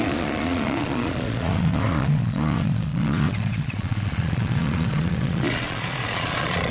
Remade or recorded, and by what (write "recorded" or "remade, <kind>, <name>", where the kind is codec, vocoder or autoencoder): remade, vocoder, Vocos